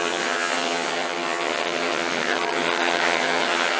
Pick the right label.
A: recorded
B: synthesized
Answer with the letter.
B